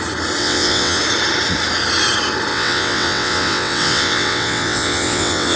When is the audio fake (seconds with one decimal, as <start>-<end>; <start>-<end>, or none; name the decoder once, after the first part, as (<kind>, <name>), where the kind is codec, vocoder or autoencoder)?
0.4-1.0 (vocoder, WaveNeXt); 2.5-5.6